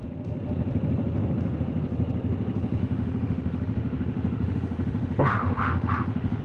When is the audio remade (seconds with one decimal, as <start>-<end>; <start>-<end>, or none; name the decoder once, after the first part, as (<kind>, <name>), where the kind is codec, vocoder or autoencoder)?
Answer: 2.8-6.4 (autoencoder, DAC-VAE)